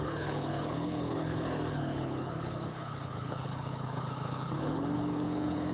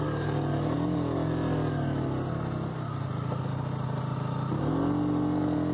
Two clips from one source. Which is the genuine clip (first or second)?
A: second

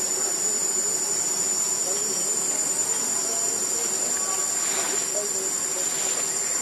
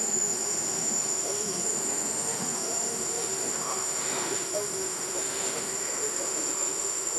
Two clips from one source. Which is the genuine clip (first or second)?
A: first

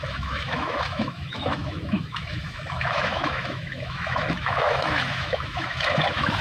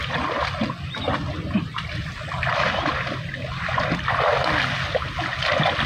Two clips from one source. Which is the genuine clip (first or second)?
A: second